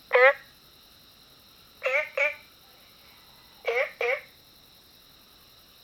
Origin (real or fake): real